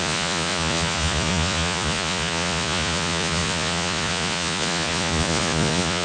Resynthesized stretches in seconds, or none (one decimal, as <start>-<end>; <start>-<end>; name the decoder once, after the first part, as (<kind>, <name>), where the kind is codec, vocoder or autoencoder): 0.0-6.0 (vocoder, Vocos)